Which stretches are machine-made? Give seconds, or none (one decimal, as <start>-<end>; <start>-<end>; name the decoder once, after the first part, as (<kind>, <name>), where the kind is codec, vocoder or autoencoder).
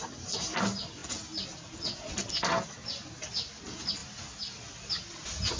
none